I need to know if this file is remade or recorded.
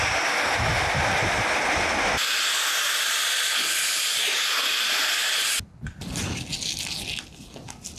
recorded